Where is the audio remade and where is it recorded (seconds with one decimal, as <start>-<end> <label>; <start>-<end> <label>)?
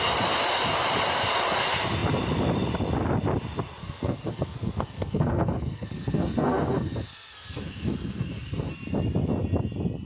0.0-3.8 recorded; 3.8-8.7 remade; 8.7-10.1 recorded